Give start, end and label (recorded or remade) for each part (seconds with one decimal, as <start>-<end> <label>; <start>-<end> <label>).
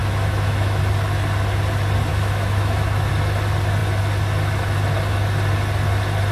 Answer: 0.0-0.8 remade; 0.8-2.1 recorded; 2.1-3.1 remade; 3.1-6.3 recorded